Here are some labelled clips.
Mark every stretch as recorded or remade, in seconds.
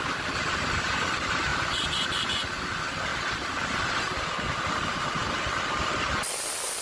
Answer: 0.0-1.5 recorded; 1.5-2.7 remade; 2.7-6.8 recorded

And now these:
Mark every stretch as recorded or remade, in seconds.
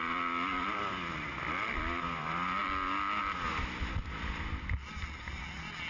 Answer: 0.0-0.5 recorded; 0.5-1.3 remade; 1.3-5.9 recorded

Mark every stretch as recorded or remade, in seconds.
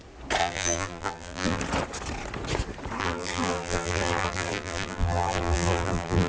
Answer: 0.0-0.4 recorded; 0.4-1.6 remade; 1.6-3.0 recorded; 3.0-6.3 remade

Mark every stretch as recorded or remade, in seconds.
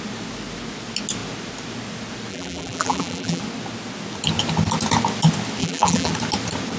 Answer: 0.0-2.3 recorded; 2.3-3.4 remade; 3.4-5.6 recorded; 5.6-6.1 remade; 6.1-6.8 recorded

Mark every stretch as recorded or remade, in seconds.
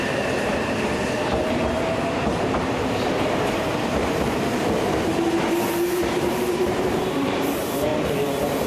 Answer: 0.0-7.9 remade; 7.9-8.7 recorded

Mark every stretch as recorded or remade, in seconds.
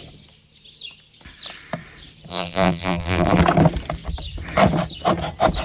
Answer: 0.0-2.3 recorded; 2.3-3.4 remade; 3.4-5.6 recorded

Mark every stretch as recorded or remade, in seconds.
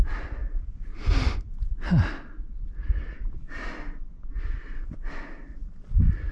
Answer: 0.0-5.5 recorded; 5.5-6.3 remade